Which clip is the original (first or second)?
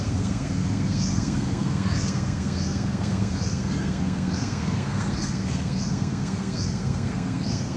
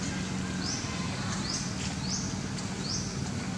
second